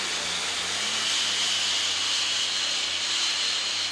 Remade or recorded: recorded